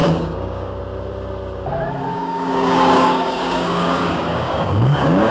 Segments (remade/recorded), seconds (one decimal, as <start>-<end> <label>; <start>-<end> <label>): 0.0-0.8 remade; 0.8-2.1 recorded; 2.1-5.3 remade